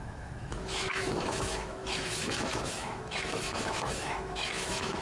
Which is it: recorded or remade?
remade